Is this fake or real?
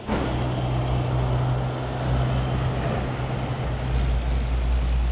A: real